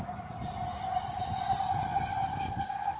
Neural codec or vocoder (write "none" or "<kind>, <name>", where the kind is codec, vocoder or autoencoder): none